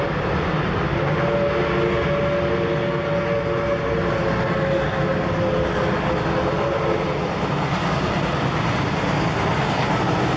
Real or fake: real